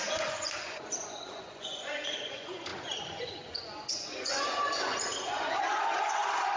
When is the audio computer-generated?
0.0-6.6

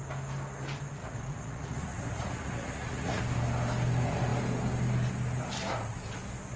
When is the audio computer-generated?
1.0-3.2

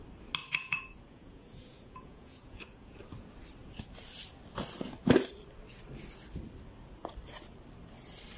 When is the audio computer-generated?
0.4-3.0

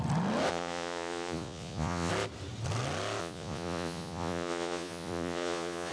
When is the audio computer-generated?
0.5-2.1; 3.2-5.9

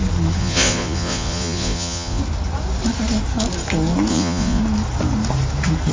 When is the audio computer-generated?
0.4-2.2; 4.1-4.6